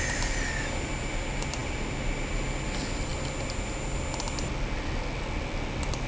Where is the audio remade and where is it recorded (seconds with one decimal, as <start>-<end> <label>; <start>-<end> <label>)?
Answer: 0.0-6.1 recorded